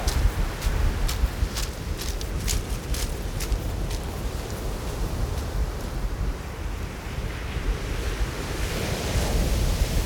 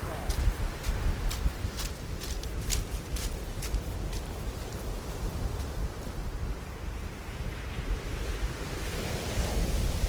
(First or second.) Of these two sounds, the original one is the first